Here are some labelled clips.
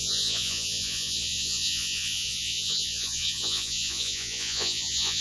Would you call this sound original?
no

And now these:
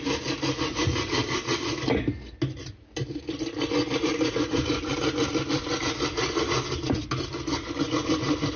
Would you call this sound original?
yes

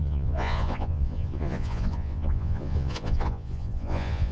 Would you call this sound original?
no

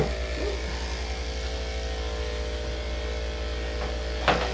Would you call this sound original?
yes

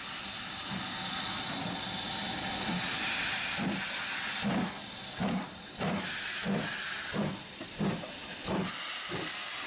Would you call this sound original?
yes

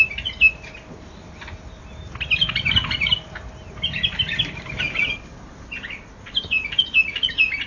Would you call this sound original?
yes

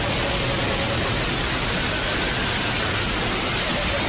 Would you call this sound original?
yes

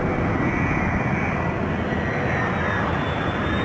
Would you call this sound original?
yes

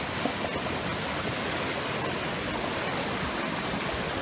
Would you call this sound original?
yes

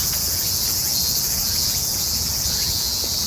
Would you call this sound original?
no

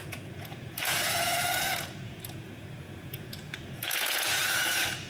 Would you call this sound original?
no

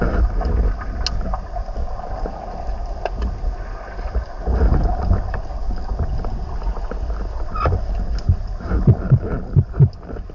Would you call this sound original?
yes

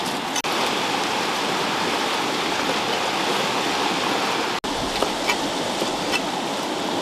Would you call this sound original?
yes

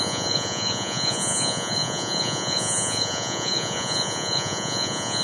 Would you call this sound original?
no